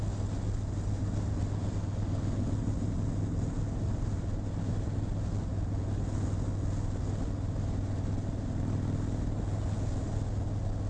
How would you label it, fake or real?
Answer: real